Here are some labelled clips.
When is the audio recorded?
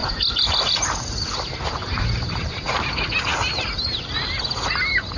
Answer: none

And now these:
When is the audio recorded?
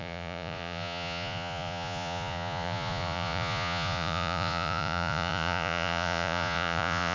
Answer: none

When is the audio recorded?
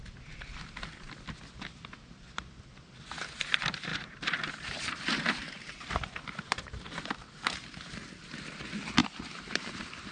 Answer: 0.0-3.9; 8.6-9.0; 9.6-10.1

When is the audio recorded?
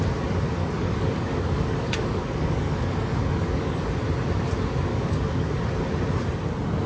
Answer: 0.0-0.6; 3.9-4.9; 5.6-6.9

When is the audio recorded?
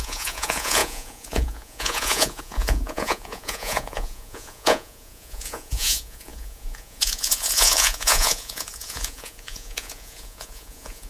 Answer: none